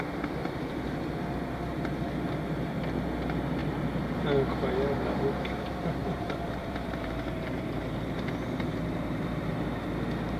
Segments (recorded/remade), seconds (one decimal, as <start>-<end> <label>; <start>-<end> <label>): 0.0-3.6 recorded; 3.6-4.2 remade; 4.2-6.0 recorded; 6.0-9.5 remade; 9.5-10.4 recorded